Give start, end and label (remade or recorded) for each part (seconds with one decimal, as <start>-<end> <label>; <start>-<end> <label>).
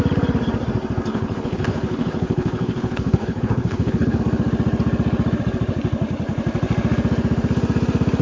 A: 0.0-1.1 recorded; 1.1-4.2 remade; 4.2-8.2 recorded